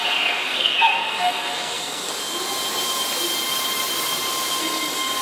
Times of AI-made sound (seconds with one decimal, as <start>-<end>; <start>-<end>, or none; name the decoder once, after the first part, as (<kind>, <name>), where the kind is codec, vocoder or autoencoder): 0.0-2.1 (codec, SNAC); 4.6-5.2